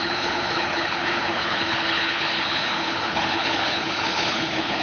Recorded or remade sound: remade